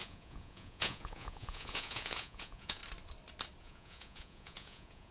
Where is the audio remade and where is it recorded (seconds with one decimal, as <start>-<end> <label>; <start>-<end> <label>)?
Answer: 0.0-2.8 remade; 2.8-3.6 recorded; 3.6-5.1 remade